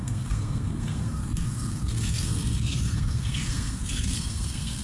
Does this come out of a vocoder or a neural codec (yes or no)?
yes